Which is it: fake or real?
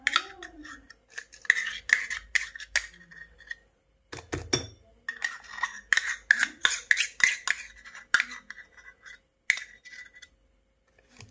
real